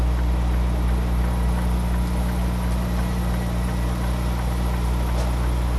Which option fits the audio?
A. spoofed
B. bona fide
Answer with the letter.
B